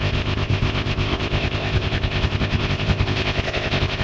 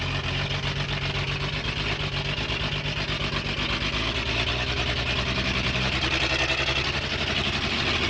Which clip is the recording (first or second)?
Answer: second